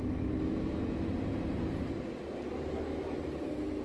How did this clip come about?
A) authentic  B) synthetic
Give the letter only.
A